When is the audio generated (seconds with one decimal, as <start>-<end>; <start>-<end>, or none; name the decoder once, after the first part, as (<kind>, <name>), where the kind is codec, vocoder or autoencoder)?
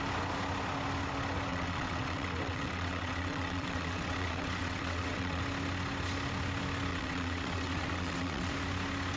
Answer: 1.5-5.4 (vocoder, WaveNeXt); 6.9-8.5